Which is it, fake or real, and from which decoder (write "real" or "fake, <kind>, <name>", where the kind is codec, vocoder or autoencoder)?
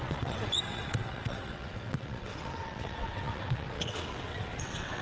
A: fake, vocoder, WaveNeXt